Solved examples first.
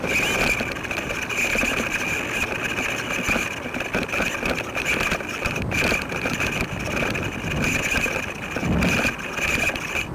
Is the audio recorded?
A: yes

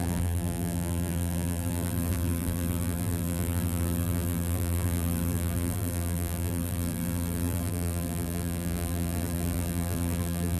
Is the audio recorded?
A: no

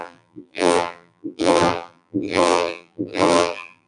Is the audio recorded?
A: no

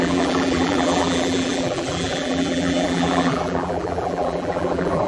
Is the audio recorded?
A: no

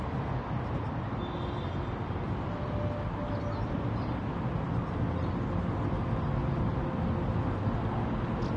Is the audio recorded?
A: yes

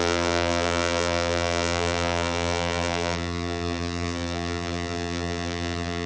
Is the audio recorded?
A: no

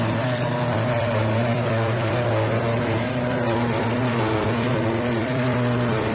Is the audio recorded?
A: no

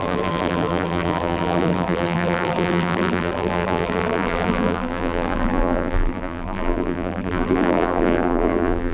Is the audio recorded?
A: no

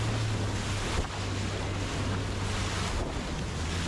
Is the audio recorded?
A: yes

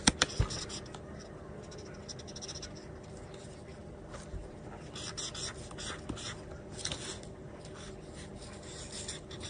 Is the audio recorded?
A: yes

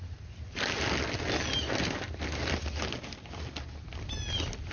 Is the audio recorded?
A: yes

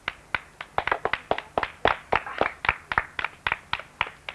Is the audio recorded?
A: yes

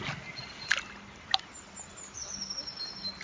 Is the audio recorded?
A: yes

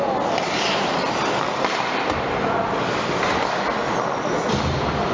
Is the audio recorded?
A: yes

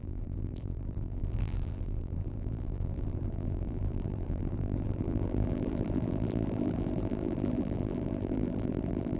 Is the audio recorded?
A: no